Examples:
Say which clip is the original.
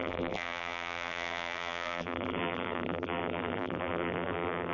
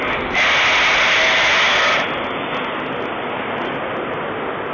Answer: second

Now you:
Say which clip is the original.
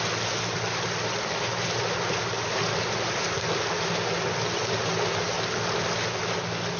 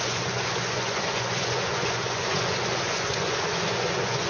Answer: first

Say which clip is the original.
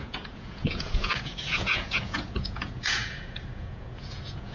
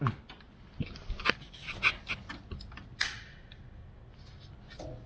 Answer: second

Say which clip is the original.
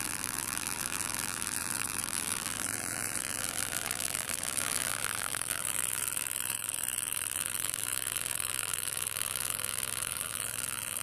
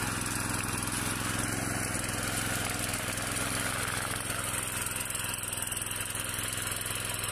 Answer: second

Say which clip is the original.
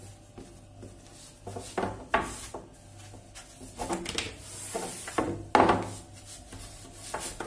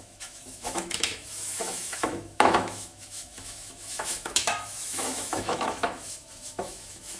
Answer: first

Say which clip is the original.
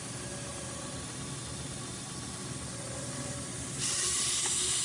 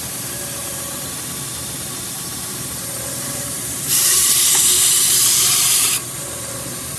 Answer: first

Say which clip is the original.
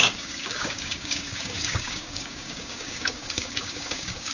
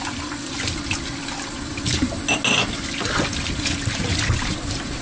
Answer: second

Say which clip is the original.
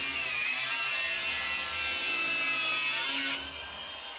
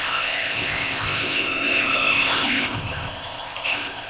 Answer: first